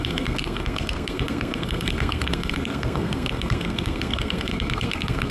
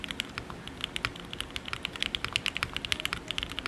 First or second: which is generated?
first